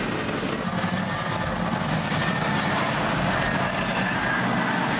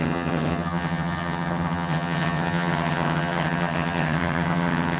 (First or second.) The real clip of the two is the first